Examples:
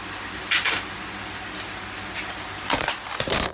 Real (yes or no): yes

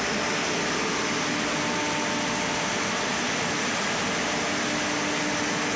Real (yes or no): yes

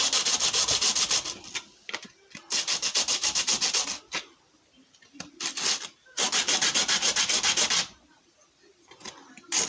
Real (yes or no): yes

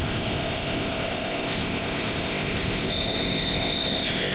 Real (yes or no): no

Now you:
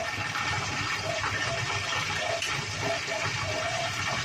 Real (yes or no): yes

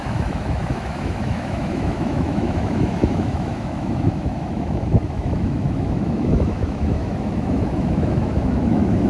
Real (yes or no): no